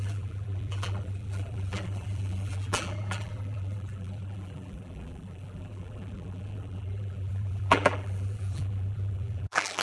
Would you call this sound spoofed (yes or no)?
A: yes